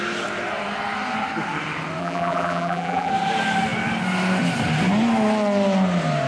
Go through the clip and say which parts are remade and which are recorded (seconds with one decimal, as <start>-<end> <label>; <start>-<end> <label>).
0.0-2.0 recorded; 2.0-3.1 remade; 3.1-6.3 recorded